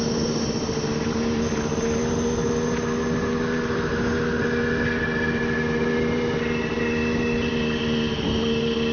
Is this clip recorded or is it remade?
recorded